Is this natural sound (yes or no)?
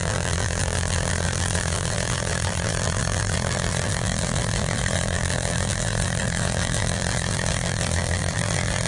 no